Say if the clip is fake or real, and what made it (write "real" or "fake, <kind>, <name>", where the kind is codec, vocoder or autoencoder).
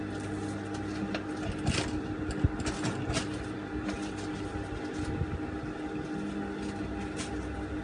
real